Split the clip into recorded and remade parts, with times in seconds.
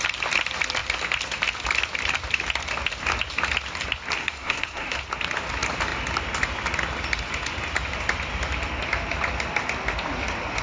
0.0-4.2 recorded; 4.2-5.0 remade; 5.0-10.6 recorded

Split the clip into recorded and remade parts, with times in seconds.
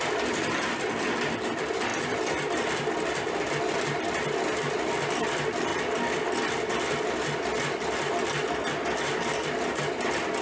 0.0-10.4 recorded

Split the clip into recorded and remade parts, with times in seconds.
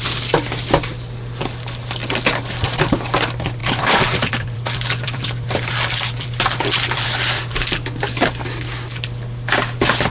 0.0-3.6 recorded; 3.6-7.5 remade; 7.5-10.1 recorded